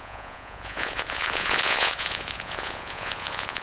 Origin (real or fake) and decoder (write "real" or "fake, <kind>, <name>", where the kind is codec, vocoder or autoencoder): fake, vocoder, Vocos